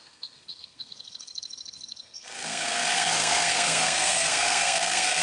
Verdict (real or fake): fake